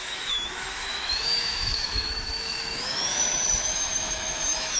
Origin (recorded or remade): remade